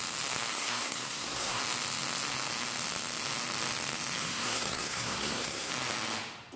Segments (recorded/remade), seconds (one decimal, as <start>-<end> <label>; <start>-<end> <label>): 0.0-0.5 recorded; 0.5-1.6 remade; 1.6-4.2 recorded; 4.2-5.7 remade; 5.7-6.6 recorded